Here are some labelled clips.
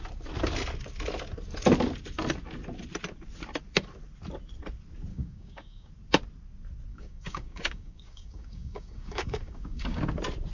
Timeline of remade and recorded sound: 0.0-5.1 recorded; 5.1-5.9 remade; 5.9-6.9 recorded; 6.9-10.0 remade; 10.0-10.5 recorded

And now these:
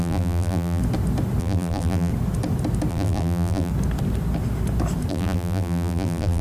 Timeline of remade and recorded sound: 0.0-0.8 remade; 0.8-1.4 recorded; 1.4-2.1 remade; 2.1-2.9 recorded; 2.9-3.7 remade; 3.7-5.1 recorded; 5.1-6.4 remade

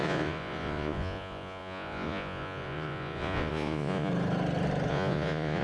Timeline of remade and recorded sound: 0.0-4.1 remade; 4.1-4.9 recorded; 4.9-5.6 remade